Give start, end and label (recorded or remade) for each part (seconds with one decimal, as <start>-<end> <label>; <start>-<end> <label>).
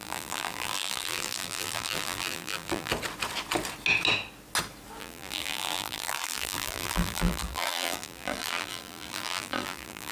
0.0-2.9 remade; 2.9-5.0 recorded; 5.0-10.1 remade